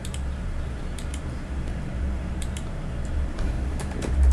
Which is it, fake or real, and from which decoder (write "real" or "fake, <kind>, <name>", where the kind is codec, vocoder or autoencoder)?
fake, vocoder, BigVGAN v2